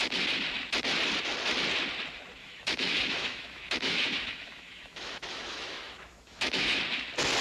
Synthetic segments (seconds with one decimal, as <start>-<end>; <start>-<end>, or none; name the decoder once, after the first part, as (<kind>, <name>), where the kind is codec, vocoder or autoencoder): 2.4-6.8 (autoencoder, DAC-VAE)

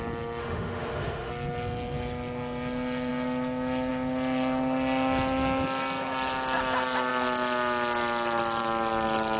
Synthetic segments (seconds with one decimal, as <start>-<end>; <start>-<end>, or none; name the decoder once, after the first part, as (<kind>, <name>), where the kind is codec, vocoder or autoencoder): 0.4-1.3 (autoencoder, DAC-VAE)

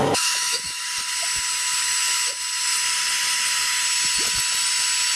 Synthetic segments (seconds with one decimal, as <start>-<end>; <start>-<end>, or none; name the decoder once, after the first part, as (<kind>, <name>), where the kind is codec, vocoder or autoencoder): 0.0-0.8 (autoencoder, DAC-VAE)

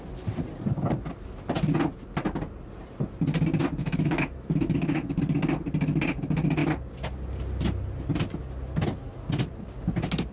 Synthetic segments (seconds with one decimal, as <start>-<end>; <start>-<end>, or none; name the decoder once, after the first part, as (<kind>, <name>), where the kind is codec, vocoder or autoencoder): 3.8-5.2 (autoencoder, DAC-VAE)

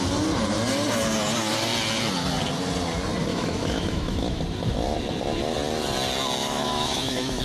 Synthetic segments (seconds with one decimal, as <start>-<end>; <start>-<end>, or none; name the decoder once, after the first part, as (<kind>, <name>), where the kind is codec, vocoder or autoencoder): 3.3-4.4 (autoencoder, DAC-VAE); 6.4-7.4